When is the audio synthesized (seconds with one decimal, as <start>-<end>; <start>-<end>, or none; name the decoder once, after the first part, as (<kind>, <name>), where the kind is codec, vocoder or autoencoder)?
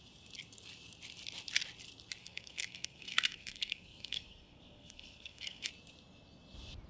2.2-5.7 (codec, SNAC)